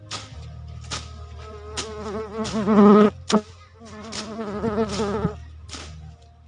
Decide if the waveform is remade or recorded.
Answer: recorded